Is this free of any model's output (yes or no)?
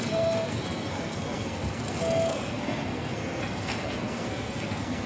no